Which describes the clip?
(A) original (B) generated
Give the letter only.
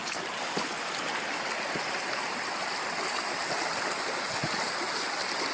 A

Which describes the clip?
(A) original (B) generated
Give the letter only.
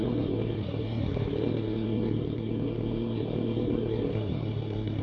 B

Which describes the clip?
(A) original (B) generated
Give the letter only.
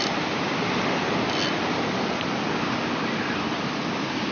A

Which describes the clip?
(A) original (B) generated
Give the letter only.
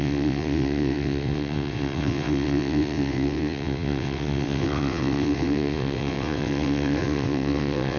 B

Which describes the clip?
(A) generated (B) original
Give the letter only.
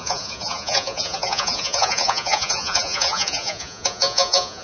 A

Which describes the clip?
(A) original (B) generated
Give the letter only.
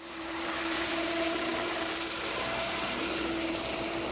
B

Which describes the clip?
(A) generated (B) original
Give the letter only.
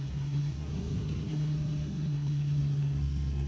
A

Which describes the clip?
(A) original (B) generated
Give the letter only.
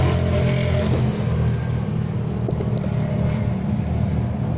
A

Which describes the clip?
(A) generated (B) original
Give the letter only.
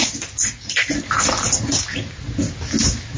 B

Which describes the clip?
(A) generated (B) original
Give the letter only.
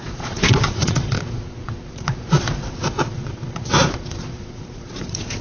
A